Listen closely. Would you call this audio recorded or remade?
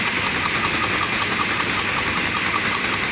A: recorded